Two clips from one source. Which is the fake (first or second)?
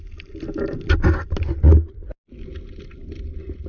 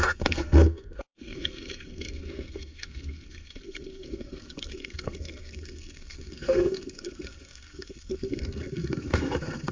second